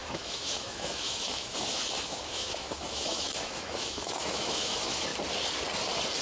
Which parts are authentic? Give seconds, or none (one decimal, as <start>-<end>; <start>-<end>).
5.1-6.2